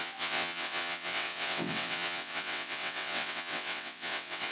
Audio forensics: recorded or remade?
remade